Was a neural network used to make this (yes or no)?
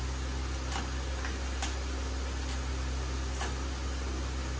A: no